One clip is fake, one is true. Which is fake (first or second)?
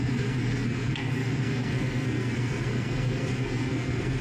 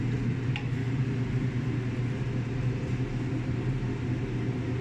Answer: first